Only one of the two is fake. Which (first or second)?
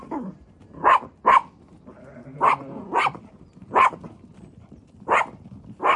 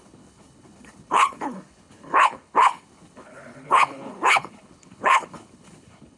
second